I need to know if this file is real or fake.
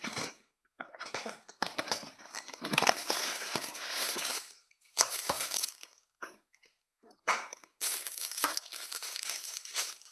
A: fake